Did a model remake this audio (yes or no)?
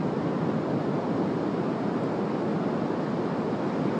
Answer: no